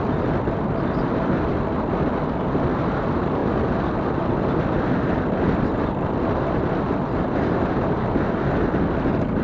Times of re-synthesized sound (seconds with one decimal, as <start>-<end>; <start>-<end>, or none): none